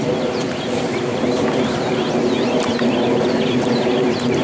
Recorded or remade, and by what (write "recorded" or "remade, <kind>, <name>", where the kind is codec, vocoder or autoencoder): recorded